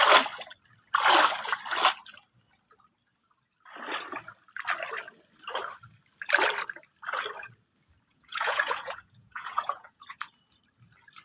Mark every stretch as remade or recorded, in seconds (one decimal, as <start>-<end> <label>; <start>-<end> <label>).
0.0-8.1 recorded; 8.1-10.3 remade; 10.3-11.2 recorded